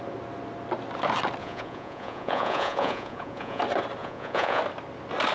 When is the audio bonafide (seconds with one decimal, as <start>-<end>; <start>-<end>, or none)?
0.0-1.4; 3.6-4.0; 4.6-5.3